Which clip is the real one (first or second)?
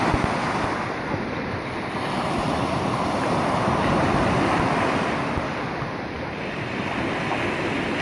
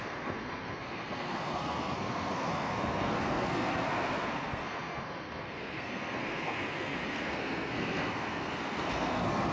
first